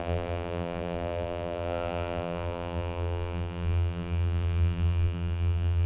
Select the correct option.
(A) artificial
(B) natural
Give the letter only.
A